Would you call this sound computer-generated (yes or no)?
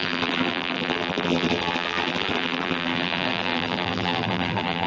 yes